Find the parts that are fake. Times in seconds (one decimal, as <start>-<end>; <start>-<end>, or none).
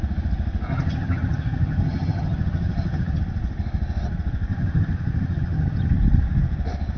0.7-3.2; 4.5-5.9